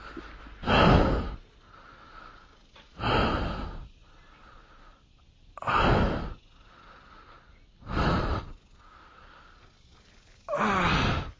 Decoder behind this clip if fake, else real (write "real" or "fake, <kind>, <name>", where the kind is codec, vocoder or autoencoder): real